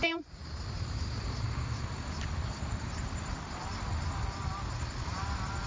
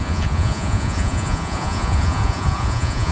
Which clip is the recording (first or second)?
first